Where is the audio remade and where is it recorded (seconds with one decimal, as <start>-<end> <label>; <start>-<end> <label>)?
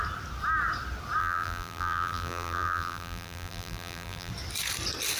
0.0-1.2 recorded; 1.2-4.3 remade; 4.3-5.2 recorded